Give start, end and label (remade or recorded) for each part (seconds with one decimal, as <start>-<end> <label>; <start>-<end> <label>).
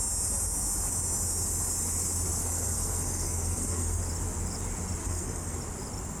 0.0-2.4 recorded; 2.4-4.0 remade; 4.0-5.0 recorded; 5.0-5.6 remade; 5.6-6.2 recorded